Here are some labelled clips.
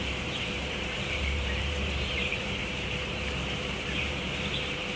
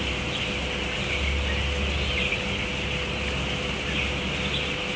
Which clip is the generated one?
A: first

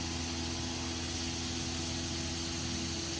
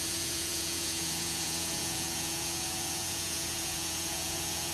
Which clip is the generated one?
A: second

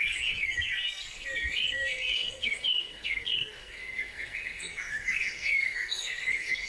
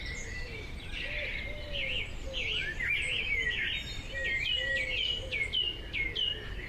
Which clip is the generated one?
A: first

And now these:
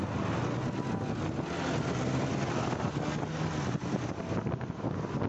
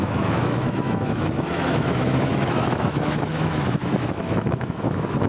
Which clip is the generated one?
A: second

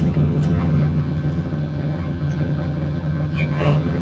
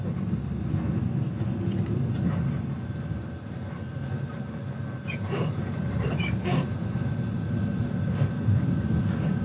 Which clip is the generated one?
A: first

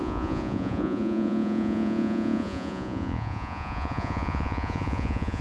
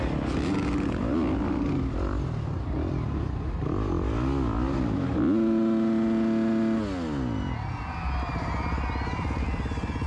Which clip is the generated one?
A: first